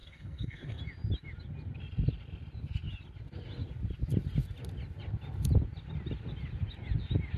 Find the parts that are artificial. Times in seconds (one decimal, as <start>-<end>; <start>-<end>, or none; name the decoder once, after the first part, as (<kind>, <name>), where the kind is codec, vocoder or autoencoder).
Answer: 0.0-0.8 (codec, SNAC)